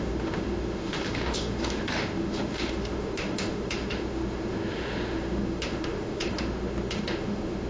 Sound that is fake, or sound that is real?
fake